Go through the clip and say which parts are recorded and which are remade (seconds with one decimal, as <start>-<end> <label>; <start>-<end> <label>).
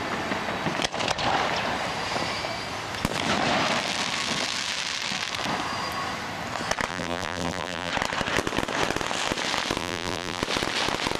0.0-6.9 recorded; 6.9-7.9 remade; 7.9-9.8 recorded; 9.8-10.4 remade; 10.4-11.2 recorded